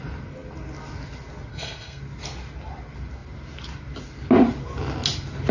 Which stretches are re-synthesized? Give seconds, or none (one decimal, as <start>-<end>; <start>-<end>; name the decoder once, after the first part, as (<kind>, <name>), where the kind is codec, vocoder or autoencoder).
1.5-2.0 (codec, SNAC)